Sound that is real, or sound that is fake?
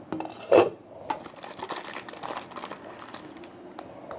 real